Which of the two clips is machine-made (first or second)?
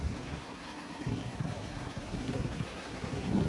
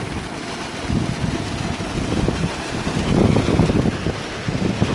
first